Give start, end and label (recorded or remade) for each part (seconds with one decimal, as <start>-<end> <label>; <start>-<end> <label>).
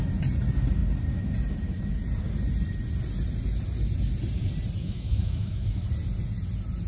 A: 0.0-4.8 recorded; 4.8-5.8 remade; 5.8-6.9 recorded